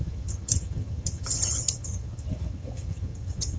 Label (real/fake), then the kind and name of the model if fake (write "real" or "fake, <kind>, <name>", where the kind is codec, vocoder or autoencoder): fake, vocoder, HiFi-GAN